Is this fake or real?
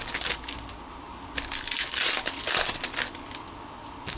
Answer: real